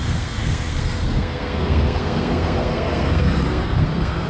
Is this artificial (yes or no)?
yes